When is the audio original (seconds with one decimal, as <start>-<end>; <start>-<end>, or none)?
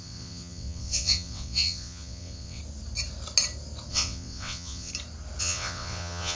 2.6-3.9; 4.9-5.4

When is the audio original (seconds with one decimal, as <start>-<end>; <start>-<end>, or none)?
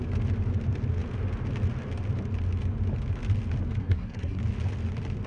0.0-3.8; 4.4-5.3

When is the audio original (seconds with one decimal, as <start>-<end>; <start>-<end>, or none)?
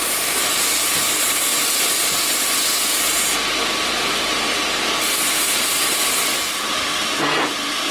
0.0-7.9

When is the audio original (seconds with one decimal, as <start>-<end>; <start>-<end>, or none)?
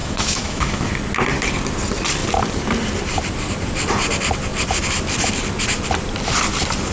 0.9-6.9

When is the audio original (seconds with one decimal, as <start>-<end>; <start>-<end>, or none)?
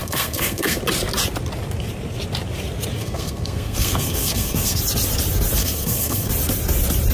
0.8-3.0; 4.8-5.6; 6.3-7.1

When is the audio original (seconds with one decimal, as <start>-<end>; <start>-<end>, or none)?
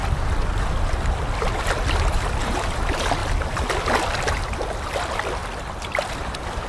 2.5-5.4; 6.0-6.7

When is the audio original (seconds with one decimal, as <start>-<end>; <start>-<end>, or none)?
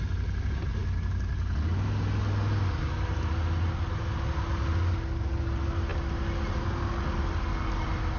0.0-8.2